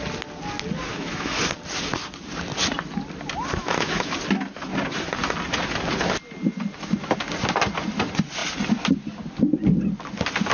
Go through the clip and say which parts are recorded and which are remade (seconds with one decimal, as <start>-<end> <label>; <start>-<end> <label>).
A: 0.0-0.9 recorded; 0.9-1.4 remade; 1.4-3.6 recorded; 3.6-4.1 remade; 4.1-10.5 recorded